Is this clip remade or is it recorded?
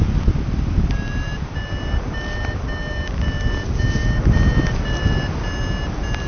recorded